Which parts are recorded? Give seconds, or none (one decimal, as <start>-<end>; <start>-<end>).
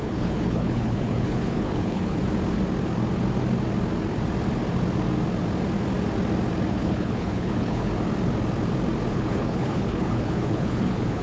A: 2.2-6.7; 7.9-9.1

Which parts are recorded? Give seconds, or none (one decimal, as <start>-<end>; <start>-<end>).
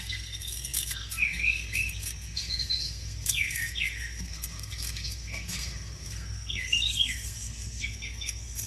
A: none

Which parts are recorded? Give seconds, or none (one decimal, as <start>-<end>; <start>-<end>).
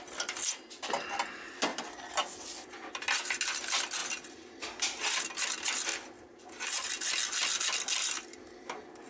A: 0.0-4.0; 5.2-5.9; 6.5-9.1